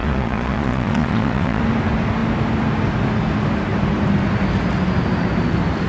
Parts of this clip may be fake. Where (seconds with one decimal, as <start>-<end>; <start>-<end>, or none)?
0.0-1.6